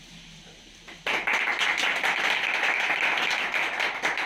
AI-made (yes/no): no